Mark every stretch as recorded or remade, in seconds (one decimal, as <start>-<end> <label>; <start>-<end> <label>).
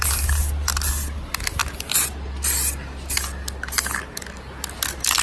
0.0-5.2 recorded